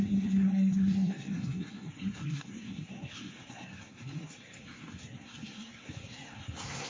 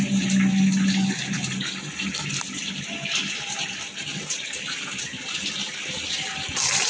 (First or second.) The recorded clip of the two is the second